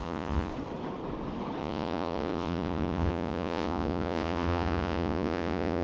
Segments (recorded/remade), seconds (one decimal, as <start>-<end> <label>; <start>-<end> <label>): 0.0-0.5 remade; 0.5-1.6 recorded; 1.6-5.8 remade

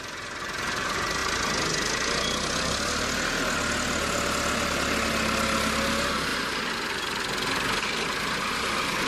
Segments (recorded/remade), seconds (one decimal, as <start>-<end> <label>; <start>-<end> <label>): 0.0-9.1 recorded

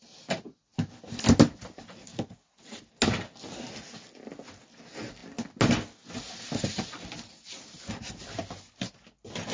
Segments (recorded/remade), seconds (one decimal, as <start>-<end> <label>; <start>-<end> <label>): 0.0-9.5 recorded

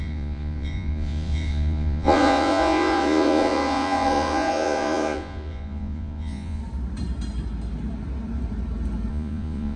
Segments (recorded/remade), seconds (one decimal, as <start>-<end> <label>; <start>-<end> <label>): 0.0-6.6 remade; 6.6-9.1 recorded; 9.1-9.8 remade

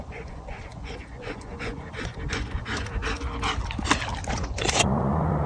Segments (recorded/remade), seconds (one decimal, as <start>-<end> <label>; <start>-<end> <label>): 0.0-3.0 remade; 3.0-4.3 recorded; 4.3-5.5 remade

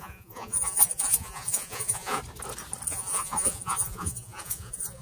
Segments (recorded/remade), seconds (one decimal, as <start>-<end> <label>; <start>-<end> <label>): 0.0-2.2 remade; 2.2-2.9 recorded; 2.9-5.0 remade

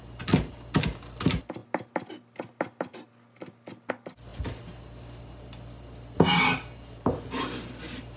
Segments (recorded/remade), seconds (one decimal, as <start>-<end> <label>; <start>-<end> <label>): 0.0-8.2 recorded

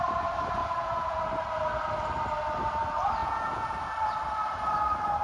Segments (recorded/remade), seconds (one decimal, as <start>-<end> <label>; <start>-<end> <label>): 0.0-0.6 recorded; 0.6-1.2 remade; 1.2-3.2 recorded; 3.2-3.7 remade; 3.7-5.2 recorded